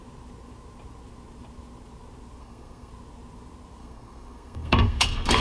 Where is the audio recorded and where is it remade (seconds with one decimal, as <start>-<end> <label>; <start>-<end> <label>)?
0.0-2.4 recorded; 2.4-2.9 remade; 2.9-3.8 recorded; 3.8-5.4 remade